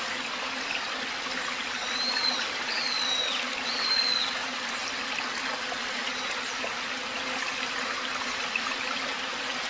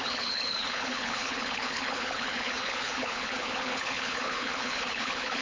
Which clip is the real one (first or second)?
first